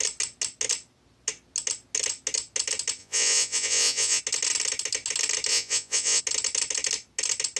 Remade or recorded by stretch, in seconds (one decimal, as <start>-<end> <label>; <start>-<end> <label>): 0.0-3.0 recorded; 3.0-4.2 remade; 4.2-5.5 recorded; 5.5-6.2 remade; 6.2-7.6 recorded